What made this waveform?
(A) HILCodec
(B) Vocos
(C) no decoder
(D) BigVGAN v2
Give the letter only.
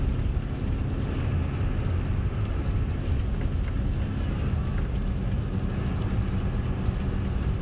C